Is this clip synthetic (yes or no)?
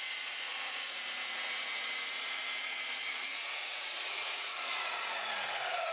yes